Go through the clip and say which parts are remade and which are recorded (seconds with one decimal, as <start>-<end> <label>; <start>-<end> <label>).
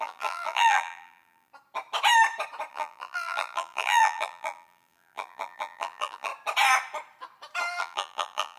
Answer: 0.0-1.5 remade; 1.5-2.7 recorded; 2.7-6.3 remade; 6.3-7.8 recorded; 7.8-8.6 remade